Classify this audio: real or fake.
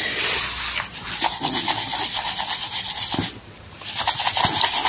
real